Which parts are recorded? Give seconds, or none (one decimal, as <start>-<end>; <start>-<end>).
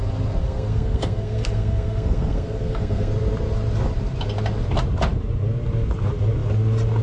0.0-0.4; 3.1-7.0